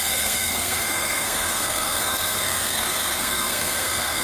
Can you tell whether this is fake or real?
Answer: fake